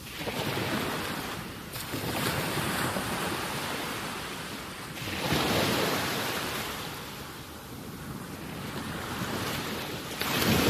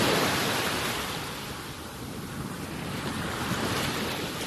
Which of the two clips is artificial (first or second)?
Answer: second